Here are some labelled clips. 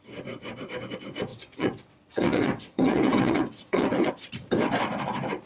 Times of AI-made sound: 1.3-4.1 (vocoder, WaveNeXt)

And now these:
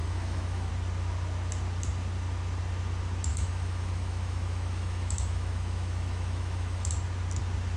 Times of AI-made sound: 0.0-0.7 (autoencoder, DAC-VAE); 3.3-6.9

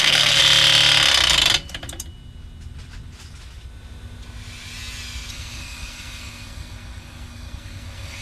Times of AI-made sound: 0.0-0.4 (codec, SNAC); 5.3-8.2

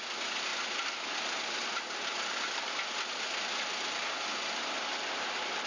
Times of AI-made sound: none

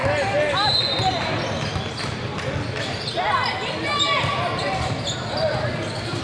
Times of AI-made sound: none

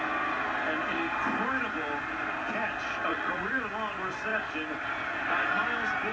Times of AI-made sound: 3.1-3.6 (vocoder, Vocos)

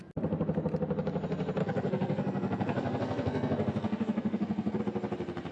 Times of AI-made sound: 1.6-4.8 (codec, SNAC)

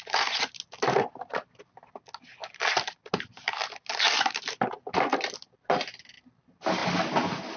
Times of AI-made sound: none